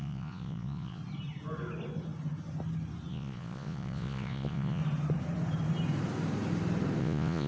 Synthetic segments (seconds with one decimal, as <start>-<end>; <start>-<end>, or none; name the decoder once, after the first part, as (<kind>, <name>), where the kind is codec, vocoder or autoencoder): 0.0-1.0 (vocoder, Vocos); 3.1-4.8; 7.0-7.5